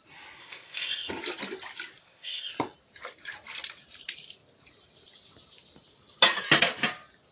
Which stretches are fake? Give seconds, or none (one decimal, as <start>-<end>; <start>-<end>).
0.4-1.1; 2.0-2.5